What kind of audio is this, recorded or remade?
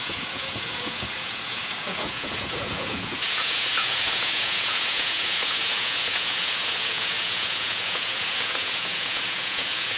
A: remade